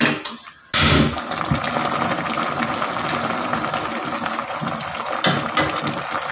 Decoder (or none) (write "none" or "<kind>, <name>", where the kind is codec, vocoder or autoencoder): none